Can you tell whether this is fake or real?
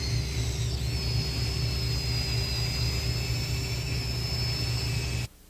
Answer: real